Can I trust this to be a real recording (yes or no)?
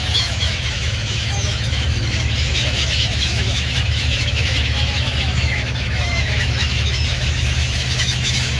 no